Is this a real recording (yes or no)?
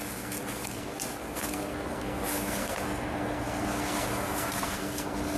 no